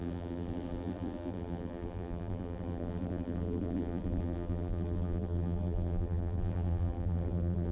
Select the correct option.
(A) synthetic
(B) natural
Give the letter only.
A